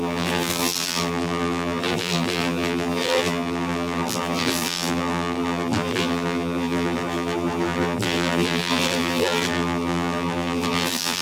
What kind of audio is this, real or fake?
fake